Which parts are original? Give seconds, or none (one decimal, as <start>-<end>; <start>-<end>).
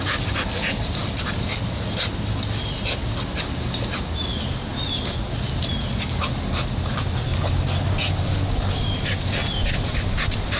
0.0-10.6